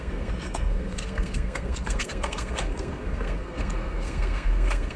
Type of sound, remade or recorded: remade